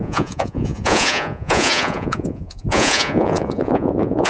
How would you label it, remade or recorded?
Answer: remade